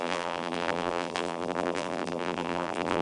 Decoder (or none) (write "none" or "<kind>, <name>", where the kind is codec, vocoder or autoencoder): vocoder, BigVGAN v2